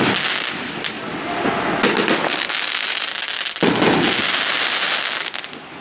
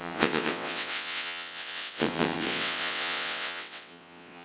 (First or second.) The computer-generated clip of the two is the second